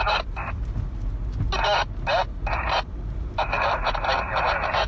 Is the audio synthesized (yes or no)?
no